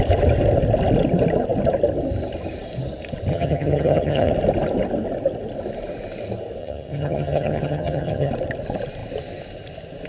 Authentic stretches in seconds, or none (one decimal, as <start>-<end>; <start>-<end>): 0.0-3.3; 4.3-6.6; 8.3-10.1